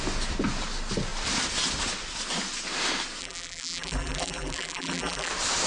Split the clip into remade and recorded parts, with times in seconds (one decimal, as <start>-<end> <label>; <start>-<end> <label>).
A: 0.0-3.2 recorded; 3.2-5.3 remade; 5.3-5.7 recorded